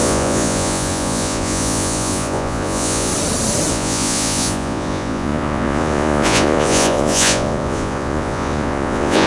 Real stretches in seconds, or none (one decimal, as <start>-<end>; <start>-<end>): 3.1-3.7